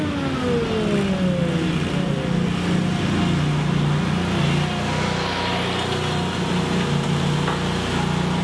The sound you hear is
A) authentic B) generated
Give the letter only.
A